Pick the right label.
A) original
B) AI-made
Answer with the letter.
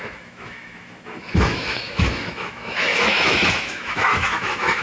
B